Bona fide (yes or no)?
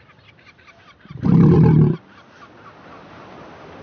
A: yes